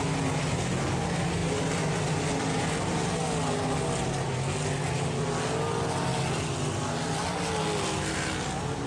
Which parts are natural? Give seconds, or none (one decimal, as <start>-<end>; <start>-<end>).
0.0-8.9